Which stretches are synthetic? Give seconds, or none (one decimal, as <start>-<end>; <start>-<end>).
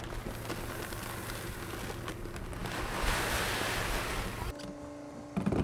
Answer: none